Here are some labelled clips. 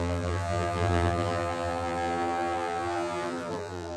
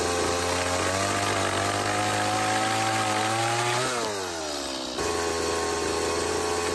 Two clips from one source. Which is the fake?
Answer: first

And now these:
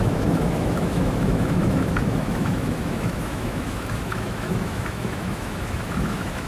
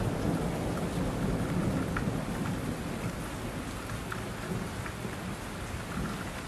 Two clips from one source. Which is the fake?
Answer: first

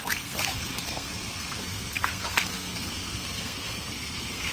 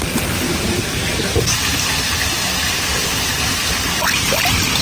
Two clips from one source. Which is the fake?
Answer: first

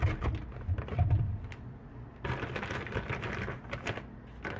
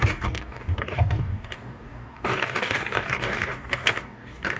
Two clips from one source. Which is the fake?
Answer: second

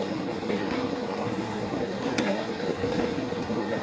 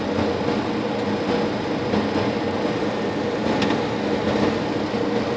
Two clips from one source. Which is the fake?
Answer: first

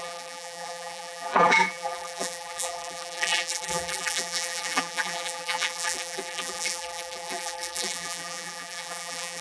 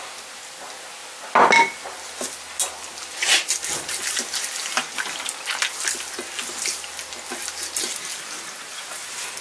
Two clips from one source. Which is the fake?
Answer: first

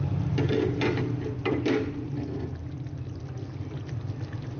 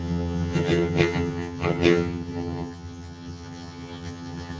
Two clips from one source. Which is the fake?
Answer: second